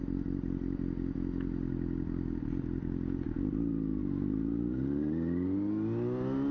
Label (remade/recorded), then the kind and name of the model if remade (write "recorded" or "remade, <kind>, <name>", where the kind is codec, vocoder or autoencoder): recorded